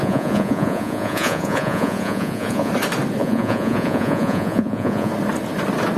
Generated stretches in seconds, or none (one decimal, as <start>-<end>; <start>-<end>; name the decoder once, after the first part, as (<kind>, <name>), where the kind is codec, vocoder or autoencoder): 0.0-2.7 (vocoder, Vocos); 3.2-5.1